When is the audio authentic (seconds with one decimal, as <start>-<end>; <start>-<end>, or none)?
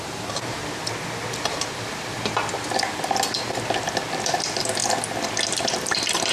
0.6-2.5; 4.8-5.6